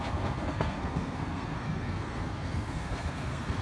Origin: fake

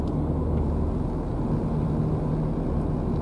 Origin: real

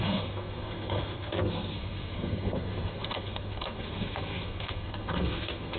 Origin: fake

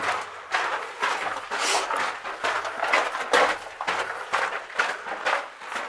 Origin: real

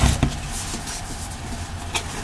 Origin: real